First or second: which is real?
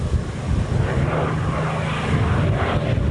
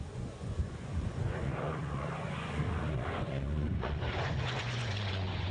first